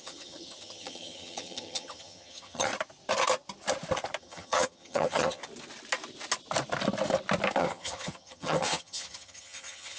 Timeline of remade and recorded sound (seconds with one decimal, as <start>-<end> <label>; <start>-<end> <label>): 0.0-2.7 remade; 2.7-4.2 recorded; 4.2-5.4 remade; 5.4-7.6 recorded; 7.6-10.0 remade